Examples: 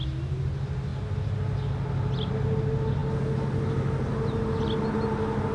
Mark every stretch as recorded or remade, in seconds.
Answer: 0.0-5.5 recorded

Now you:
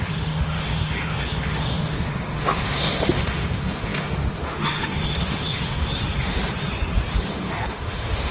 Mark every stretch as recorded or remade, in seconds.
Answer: 0.0-6.4 remade; 6.4-7.3 recorded; 7.3-8.3 remade